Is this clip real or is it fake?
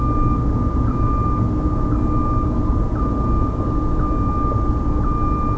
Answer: real